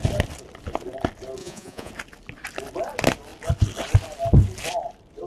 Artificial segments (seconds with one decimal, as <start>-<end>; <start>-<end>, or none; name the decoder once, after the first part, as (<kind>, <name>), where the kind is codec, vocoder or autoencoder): 1.4-1.9 (vocoder, Vocos)